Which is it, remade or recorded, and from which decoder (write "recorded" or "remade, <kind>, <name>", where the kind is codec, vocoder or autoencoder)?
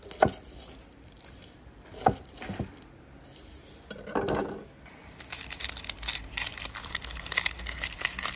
recorded